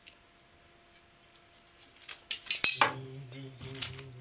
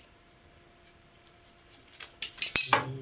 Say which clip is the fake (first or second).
second